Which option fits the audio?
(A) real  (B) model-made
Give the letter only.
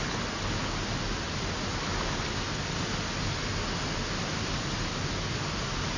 A